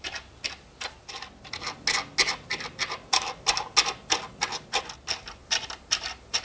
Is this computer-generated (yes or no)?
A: no